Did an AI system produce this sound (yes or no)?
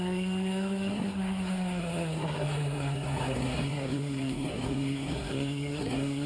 yes